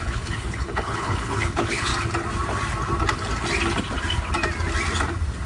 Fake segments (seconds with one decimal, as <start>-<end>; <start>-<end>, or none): 0.0-1.9